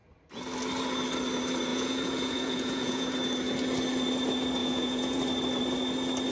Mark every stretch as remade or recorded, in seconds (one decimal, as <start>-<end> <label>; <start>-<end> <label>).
0.0-1.7 recorded; 1.7-3.1 remade; 3.1-4.6 recorded; 4.6-5.2 remade; 5.2-6.3 recorded